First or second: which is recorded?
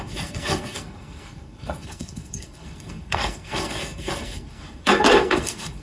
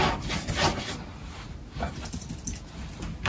second